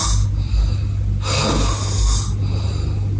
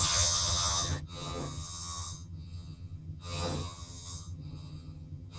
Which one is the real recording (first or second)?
first